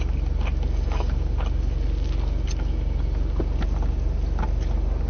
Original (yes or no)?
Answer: yes